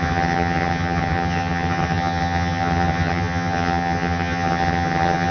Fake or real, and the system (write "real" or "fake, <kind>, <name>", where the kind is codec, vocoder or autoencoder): fake, vocoder, HiFi-GAN